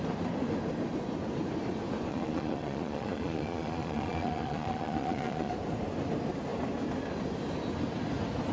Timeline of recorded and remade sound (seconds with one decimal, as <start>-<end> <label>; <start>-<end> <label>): 0.0-2.1 recorded; 2.1-5.5 remade; 5.5-8.5 recorded